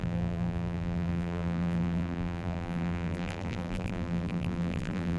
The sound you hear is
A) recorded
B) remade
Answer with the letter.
B